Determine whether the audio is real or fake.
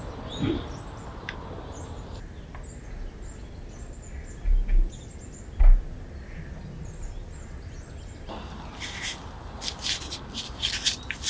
real